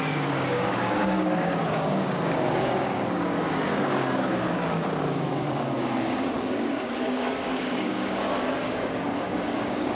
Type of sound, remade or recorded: remade